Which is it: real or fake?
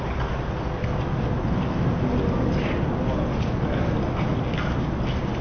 real